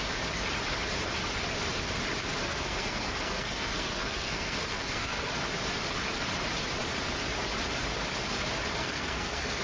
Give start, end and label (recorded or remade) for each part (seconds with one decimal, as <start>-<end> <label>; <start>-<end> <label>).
0.0-2.4 recorded; 2.4-5.3 remade; 5.3-8.8 recorded; 8.8-9.6 remade